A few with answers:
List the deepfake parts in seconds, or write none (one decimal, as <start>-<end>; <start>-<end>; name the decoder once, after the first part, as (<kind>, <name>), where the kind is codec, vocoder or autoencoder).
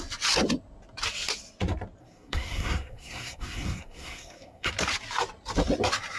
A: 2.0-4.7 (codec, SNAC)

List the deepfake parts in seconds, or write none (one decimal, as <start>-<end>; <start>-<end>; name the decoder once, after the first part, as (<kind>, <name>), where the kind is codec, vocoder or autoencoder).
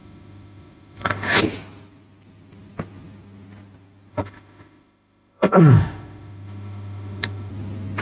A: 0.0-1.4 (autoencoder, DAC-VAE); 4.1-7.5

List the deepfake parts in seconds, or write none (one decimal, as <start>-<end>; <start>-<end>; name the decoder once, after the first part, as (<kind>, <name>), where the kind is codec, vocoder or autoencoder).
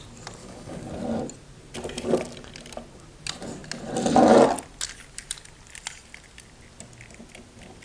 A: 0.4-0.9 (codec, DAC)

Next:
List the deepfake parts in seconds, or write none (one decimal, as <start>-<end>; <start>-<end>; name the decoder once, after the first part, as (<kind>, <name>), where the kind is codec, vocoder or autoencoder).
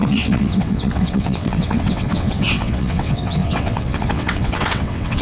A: 0.0-5.2 (vocoder, WaveNeXt)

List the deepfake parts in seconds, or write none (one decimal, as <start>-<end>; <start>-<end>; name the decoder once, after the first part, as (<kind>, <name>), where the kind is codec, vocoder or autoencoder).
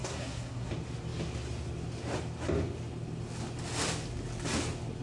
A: 0.0-0.7 (codec, SNAC)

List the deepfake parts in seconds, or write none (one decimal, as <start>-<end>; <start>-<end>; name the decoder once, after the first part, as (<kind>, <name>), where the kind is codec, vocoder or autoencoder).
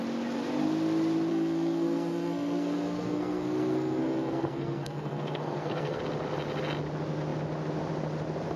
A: 1.3-6.0 (codec, SNAC)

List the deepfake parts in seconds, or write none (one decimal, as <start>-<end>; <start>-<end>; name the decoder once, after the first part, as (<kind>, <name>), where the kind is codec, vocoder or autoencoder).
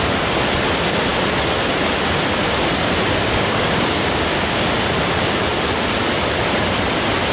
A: 3.2-4.7 (codec, DAC)